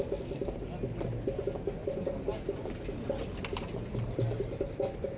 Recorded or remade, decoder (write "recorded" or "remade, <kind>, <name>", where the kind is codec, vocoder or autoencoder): recorded